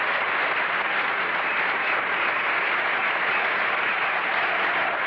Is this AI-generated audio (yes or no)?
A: no